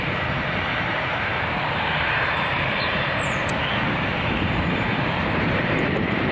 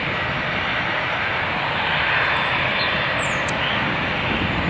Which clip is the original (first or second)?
second